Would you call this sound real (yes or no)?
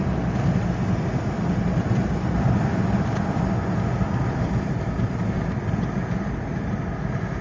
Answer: yes